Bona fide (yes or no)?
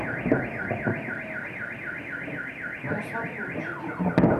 yes